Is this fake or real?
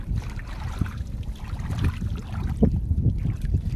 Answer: real